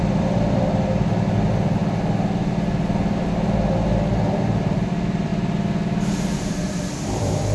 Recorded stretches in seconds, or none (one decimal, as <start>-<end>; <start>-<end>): 1.8-4.1; 5.3-6.5